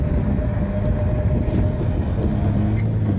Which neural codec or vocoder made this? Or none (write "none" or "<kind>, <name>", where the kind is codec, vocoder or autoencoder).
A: none